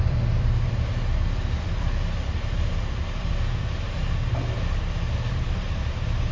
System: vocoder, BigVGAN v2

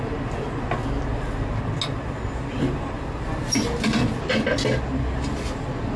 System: none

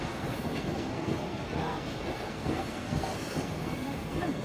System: codec, SNAC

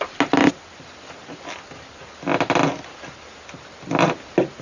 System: none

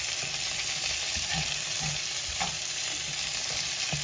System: none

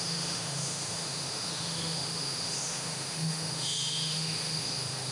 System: autoencoder, DAC-VAE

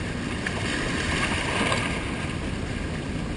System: none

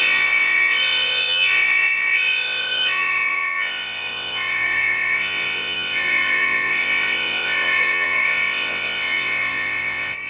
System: vocoder, WaveNeXt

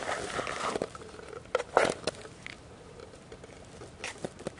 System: none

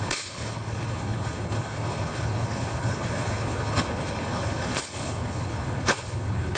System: codec, HILCodec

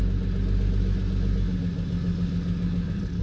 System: none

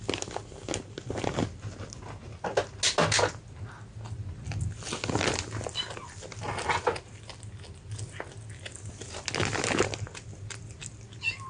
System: none